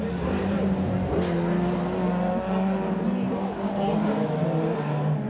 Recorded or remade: recorded